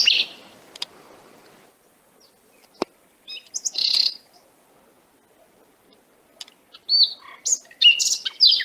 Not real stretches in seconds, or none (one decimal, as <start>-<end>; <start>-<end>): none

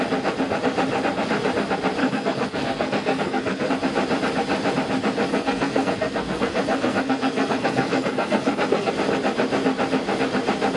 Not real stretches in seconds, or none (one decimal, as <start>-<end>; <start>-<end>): 2.0-3.7; 5.3-8.9

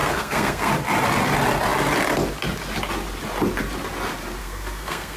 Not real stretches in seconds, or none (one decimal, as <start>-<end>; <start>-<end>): 0.0-0.7; 4.4-5.2